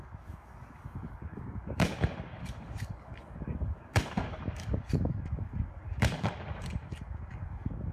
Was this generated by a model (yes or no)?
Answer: yes